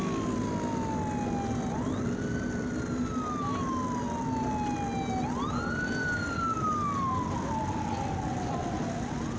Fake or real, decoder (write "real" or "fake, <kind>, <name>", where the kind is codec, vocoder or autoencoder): real